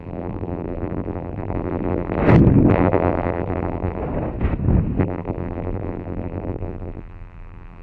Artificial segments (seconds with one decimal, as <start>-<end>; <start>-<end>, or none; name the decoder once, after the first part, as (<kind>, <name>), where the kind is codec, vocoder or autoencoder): 0.0-2.2 (vocoder, BigVGAN v2); 2.7-4.0; 5.0-7.8